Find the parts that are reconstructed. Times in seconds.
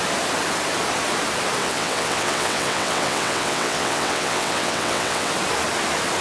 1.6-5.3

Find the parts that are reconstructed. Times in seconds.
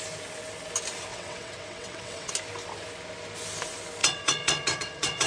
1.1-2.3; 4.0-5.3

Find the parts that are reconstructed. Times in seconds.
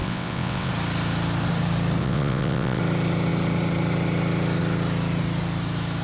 0.0-0.7; 2.0-2.8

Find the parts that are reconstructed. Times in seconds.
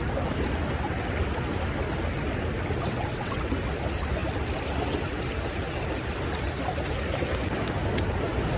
2.9-3.4